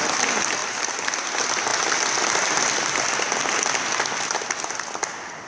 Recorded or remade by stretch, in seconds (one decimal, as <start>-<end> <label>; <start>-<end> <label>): 0.0-5.5 recorded